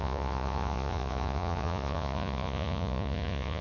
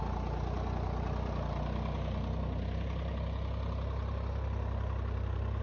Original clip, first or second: second